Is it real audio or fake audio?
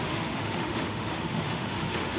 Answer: fake